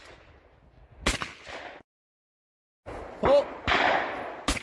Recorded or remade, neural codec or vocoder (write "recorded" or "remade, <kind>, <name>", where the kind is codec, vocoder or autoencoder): recorded